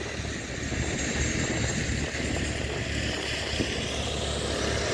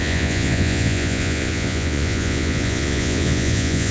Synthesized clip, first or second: second